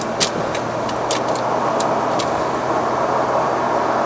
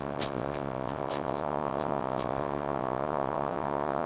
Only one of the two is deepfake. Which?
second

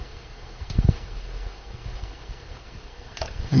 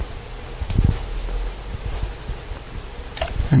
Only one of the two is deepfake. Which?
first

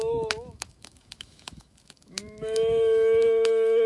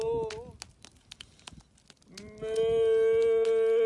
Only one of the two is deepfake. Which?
first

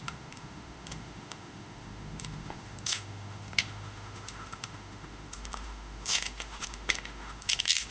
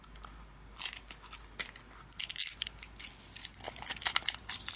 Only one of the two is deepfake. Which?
first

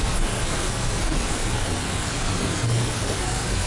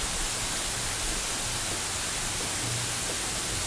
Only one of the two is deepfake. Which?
first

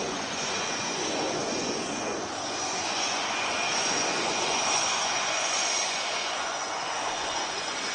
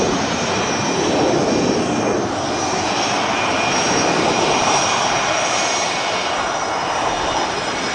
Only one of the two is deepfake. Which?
first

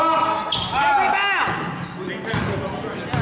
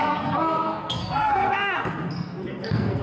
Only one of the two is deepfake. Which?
second